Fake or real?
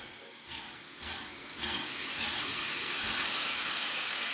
fake